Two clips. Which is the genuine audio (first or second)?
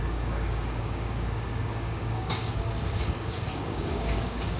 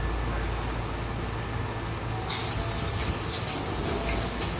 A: second